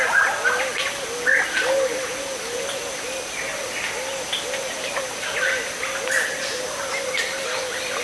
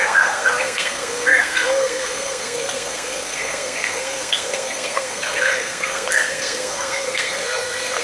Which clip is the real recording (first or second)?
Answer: first